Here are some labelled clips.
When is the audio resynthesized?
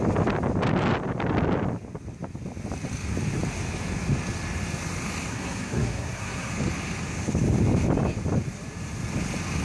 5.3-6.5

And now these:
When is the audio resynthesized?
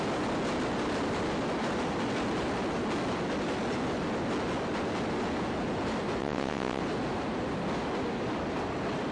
6.2-6.8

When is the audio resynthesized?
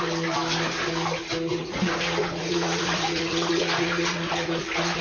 1.6-4.6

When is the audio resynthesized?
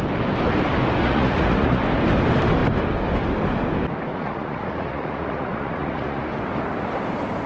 1.0-1.8; 4.1-6.3